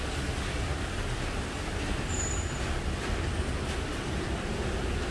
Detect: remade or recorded recorded